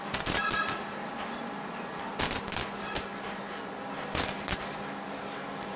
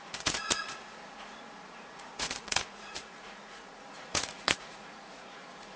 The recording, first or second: first